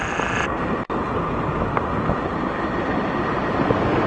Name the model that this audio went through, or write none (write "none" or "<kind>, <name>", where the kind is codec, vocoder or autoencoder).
none